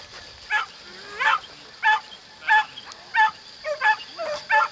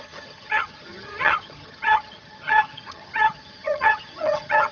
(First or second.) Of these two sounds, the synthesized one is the second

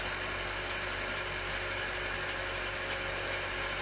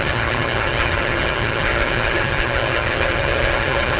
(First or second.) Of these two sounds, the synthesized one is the second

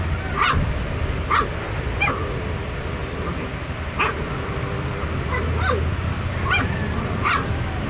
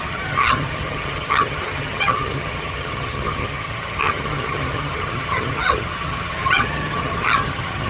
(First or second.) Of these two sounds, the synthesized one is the second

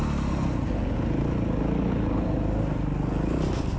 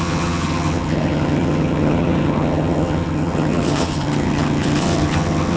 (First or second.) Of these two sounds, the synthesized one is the second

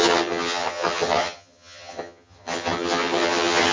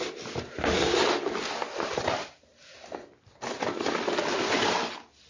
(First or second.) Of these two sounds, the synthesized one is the first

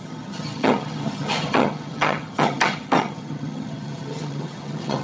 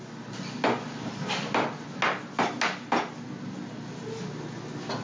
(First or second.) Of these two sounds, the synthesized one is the first